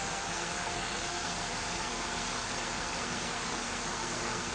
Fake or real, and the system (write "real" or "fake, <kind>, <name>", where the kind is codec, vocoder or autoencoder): fake, codec, SNAC